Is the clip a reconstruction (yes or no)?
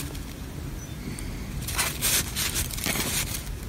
no